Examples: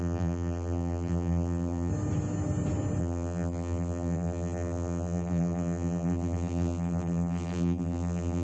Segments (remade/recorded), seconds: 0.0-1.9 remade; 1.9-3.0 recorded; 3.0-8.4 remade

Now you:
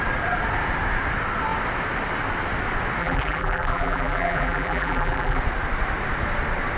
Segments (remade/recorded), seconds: 0.0-3.0 recorded; 3.0-5.4 remade; 5.4-6.8 recorded

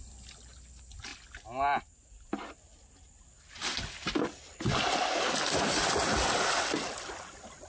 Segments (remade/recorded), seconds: 0.0-7.7 recorded

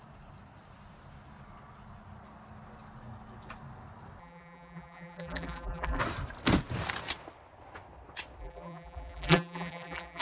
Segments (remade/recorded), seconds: 0.0-4.2 recorded; 4.2-6.0 remade; 6.0-8.4 recorded; 8.4-10.2 remade

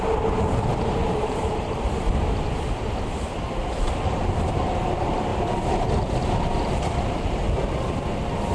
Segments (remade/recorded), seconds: 0.0-0.7 recorded; 0.7-2.1 remade; 2.1-3.8 recorded; 3.8-4.7 remade; 4.7-5.3 recorded; 5.3-5.9 remade; 5.9-8.5 recorded

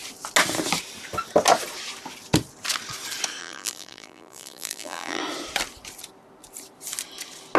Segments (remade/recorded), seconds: 0.0-3.4 recorded; 3.4-5.2 remade; 5.2-7.6 recorded

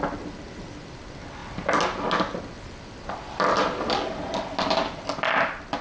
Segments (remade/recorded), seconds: 0.0-5.8 recorded

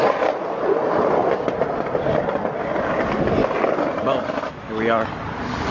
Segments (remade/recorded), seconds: 0.0-5.7 recorded